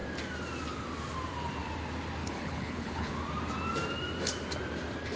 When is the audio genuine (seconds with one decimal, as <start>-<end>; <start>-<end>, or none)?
0.0-2.2; 3.1-5.2